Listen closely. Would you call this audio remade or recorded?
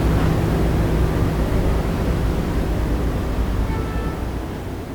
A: recorded